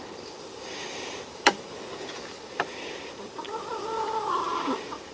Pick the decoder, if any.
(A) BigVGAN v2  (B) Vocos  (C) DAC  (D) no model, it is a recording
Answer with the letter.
A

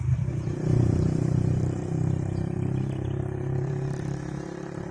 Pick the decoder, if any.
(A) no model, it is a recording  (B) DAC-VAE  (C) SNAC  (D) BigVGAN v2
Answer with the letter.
D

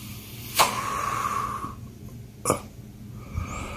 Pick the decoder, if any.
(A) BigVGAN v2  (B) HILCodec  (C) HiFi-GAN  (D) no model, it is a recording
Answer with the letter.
D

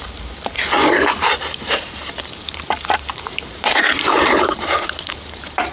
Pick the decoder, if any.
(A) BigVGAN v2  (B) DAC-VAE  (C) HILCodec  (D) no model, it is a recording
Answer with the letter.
A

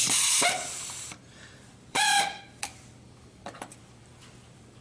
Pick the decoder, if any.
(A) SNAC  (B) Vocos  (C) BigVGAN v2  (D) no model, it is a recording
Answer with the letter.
C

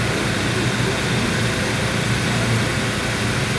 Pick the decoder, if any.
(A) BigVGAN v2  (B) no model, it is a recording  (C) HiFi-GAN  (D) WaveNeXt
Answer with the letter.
B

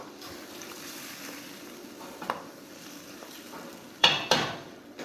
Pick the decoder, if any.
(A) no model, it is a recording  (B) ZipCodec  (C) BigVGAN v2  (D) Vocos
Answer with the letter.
C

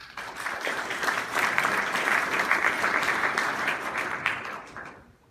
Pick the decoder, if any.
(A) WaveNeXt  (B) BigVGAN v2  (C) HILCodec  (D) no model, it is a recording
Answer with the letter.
B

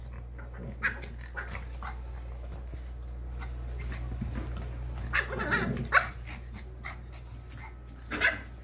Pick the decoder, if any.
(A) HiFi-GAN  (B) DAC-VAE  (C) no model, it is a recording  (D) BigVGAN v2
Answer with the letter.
C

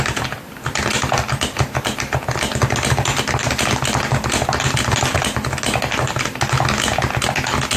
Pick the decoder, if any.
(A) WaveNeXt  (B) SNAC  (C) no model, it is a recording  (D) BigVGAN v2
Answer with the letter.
C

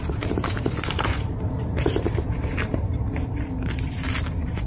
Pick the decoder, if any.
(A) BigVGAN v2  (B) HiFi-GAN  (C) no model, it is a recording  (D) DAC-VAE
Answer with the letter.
A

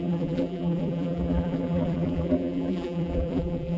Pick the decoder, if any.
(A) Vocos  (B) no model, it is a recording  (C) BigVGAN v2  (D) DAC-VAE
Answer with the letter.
C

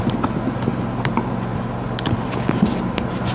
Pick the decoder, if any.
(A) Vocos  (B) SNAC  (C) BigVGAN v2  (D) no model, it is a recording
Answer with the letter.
D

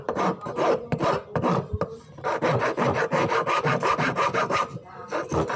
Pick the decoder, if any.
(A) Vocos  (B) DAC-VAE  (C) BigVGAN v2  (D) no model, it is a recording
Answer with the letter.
D